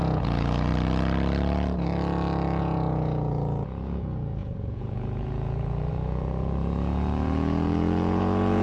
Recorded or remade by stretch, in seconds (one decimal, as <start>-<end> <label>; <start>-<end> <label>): 0.0-0.7 remade; 0.7-2.6 recorded; 2.6-8.6 remade